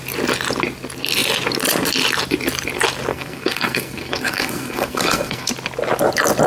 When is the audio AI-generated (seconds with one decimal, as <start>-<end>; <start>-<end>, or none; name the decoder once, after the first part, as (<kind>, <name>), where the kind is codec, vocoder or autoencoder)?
3.1-5.5 (codec, SNAC)